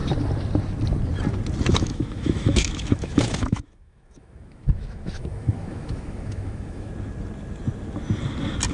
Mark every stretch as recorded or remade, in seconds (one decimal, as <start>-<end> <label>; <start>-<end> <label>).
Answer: 0.0-1.7 recorded; 1.7-6.9 remade; 6.9-8.7 recorded